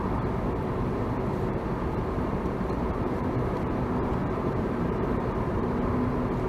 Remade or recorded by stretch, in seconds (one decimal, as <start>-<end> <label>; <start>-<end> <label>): 0.0-1.3 recorded; 1.3-3.8 remade; 3.8-4.2 recorded; 4.2-5.9 remade; 5.9-6.5 recorded